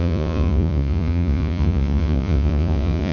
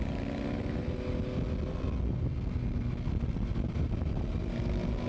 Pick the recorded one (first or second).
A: second